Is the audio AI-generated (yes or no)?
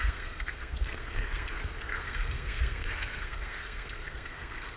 yes